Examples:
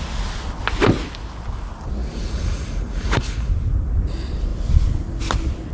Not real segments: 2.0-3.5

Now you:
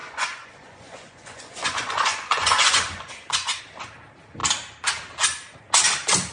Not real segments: 0.0-3.6

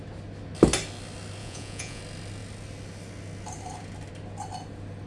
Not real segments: 1.4-2.0

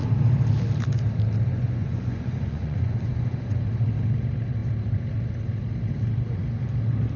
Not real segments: 1.5-3.6

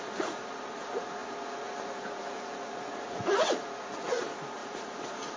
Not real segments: 0.0-5.4